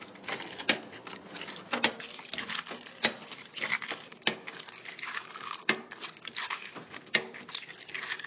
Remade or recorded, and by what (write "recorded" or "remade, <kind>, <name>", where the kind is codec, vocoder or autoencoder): recorded